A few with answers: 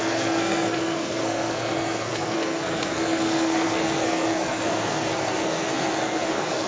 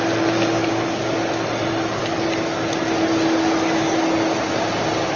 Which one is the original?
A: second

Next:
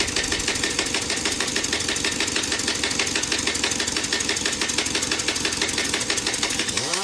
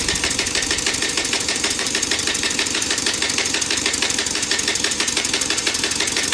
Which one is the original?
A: first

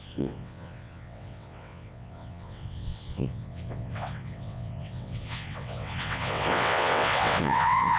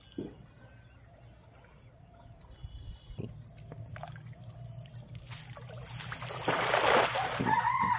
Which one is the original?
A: second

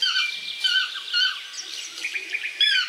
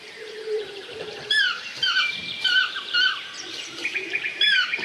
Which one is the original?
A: first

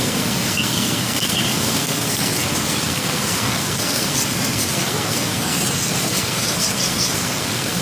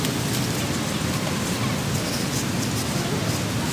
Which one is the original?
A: second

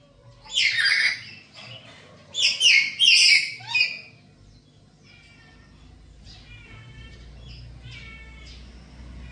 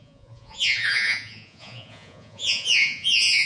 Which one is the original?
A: first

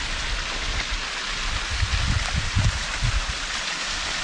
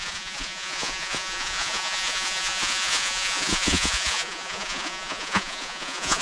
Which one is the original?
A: first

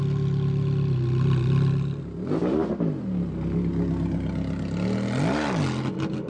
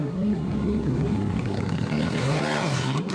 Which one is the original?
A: first